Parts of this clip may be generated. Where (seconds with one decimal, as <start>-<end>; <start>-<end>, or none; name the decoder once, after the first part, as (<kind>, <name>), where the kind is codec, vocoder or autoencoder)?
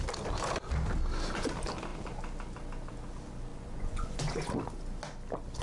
3.5-4.5 (vocoder, Vocos)